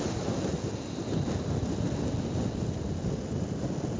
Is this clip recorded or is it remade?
recorded